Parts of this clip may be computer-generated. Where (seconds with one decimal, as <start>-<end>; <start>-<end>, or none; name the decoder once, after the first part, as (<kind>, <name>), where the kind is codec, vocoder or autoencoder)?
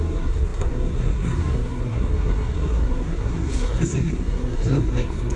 0.0-5.4 (codec, SNAC)